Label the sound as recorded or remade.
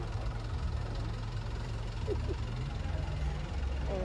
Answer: recorded